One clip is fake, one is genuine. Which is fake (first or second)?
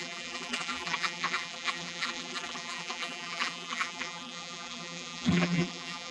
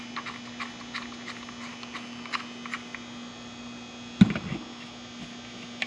first